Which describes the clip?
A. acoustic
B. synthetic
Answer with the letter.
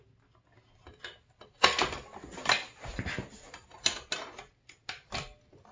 A